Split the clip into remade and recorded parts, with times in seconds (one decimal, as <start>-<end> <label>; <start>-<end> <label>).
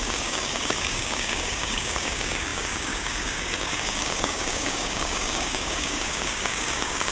0.0-7.1 remade